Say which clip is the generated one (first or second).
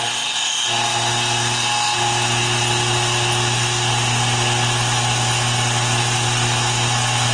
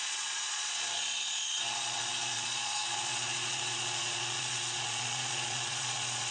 second